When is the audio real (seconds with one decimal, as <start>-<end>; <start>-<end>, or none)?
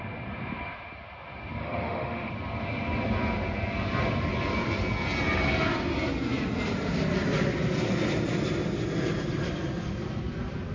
0.0-1.6; 2.3-10.7